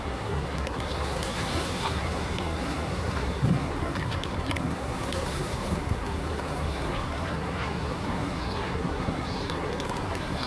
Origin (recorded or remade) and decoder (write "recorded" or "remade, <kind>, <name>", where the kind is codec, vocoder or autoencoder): remade, codec, SNAC